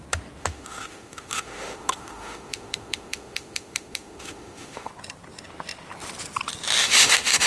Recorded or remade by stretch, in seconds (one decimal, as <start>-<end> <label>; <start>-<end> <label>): 0.0-0.4 recorded; 0.4-4.9 remade; 4.9-6.8 recorded; 6.8-7.5 remade